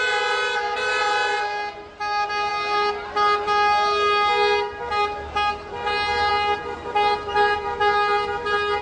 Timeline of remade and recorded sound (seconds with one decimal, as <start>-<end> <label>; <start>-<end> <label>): 0.0-8.8 recorded